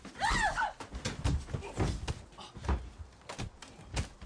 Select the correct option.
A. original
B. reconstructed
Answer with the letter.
A